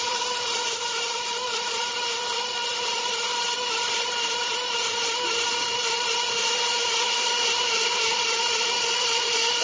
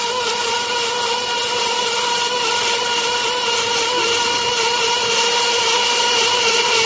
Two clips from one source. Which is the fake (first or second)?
first